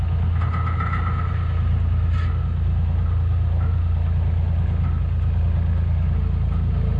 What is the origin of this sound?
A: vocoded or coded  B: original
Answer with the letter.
B